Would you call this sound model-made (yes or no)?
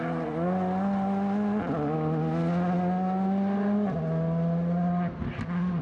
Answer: no